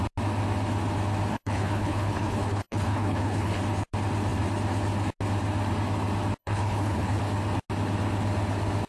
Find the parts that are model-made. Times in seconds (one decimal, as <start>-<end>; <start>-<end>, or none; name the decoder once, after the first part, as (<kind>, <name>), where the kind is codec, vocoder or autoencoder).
1.3-3.6 (codec, HILCodec); 6.4-7.2